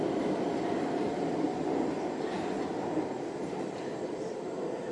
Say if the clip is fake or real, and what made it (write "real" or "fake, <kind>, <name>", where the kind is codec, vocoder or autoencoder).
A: real